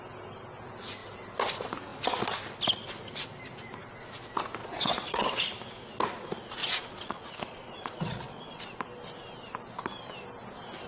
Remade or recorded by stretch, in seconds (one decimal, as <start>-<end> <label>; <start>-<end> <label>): 0.0-4.6 recorded; 4.6-5.4 remade; 5.4-6.6 recorded; 6.6-8.6 remade; 8.6-10.9 recorded